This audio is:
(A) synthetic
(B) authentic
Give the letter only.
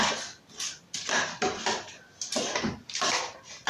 A